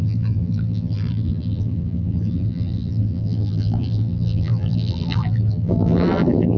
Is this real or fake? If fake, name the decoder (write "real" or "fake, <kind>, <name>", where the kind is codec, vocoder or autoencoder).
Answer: fake, vocoder, BigVGAN v2